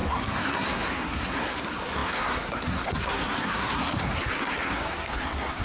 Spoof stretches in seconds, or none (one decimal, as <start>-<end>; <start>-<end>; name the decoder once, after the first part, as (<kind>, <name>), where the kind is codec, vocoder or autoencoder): 0.0-5.6 (codec, SNAC)